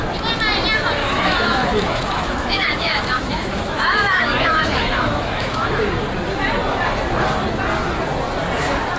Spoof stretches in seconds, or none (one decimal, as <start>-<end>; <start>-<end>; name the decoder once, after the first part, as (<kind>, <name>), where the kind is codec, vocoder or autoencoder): 1.0-5.7 (autoencoder, DAC-VAE)